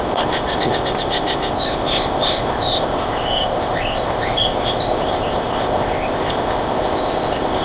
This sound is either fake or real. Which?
fake